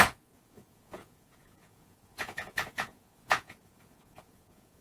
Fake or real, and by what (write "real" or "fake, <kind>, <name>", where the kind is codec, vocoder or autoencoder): fake, vocoder, Vocos